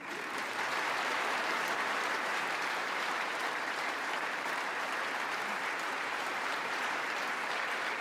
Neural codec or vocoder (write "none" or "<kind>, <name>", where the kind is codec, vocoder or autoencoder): vocoder, BigVGAN v2